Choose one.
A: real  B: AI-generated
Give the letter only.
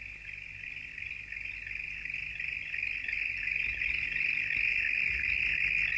A